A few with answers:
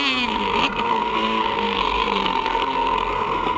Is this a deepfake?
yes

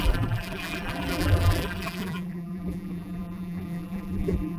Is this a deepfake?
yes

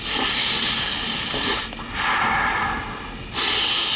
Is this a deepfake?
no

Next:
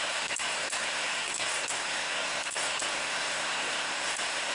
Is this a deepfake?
yes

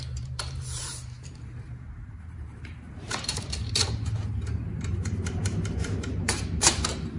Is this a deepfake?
yes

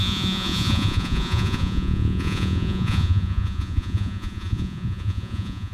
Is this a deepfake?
yes